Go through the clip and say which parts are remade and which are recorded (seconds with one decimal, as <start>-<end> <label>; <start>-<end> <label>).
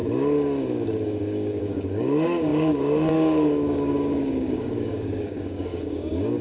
0.0-0.6 recorded; 0.6-6.4 remade